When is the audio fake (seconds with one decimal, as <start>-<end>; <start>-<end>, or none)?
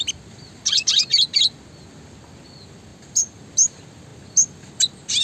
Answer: 2.9-3.4